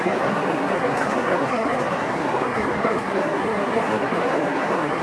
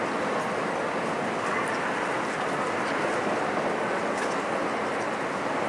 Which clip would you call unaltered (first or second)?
second